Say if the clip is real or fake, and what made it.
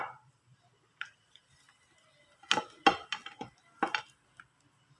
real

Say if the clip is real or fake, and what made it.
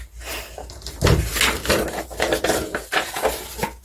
real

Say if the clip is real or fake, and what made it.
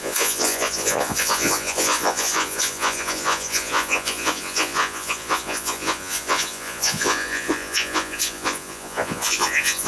fake, vocoder, Vocos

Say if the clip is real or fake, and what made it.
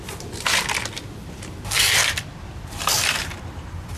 real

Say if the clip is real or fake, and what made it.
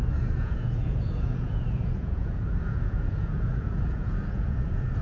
fake, vocoder, Vocos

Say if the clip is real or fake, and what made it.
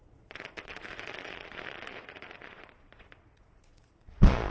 fake, vocoder, Vocos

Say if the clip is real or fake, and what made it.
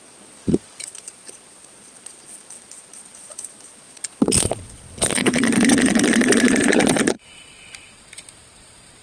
fake, vocoder, Vocos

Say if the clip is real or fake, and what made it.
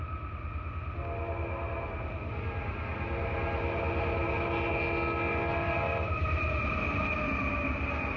real